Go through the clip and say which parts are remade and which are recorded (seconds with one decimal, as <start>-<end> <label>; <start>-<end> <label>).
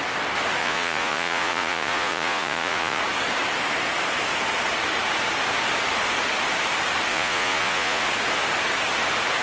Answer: 0.0-0.6 recorded; 0.6-3.0 remade; 3.0-7.1 recorded; 7.1-8.0 remade; 8.0-9.4 recorded